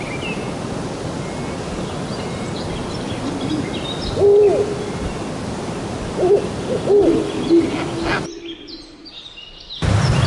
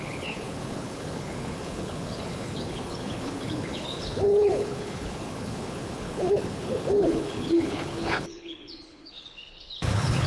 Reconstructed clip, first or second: second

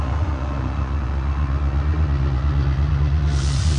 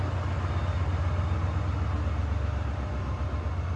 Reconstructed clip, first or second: first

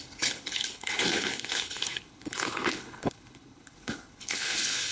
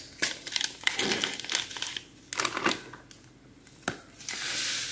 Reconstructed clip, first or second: first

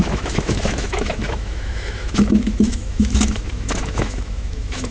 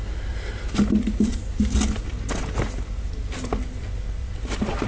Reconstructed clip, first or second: first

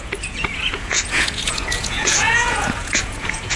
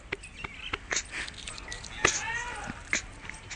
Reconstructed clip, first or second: first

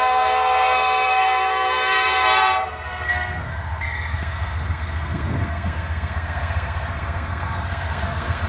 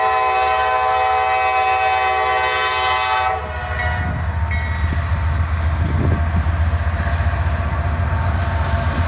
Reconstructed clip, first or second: first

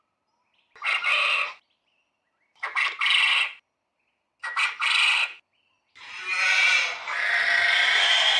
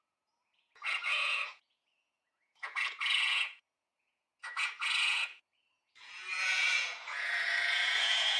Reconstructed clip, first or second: second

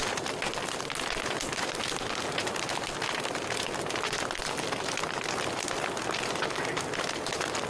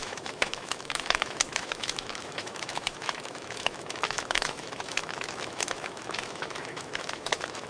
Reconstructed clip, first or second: second